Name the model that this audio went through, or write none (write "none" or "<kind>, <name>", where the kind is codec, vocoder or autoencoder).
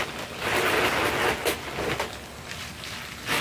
none